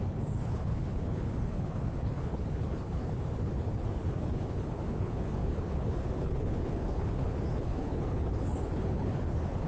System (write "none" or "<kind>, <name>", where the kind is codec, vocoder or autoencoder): codec, HILCodec